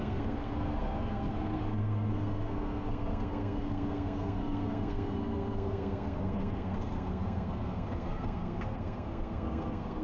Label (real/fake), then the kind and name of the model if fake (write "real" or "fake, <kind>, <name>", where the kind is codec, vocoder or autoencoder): fake, codec, SNAC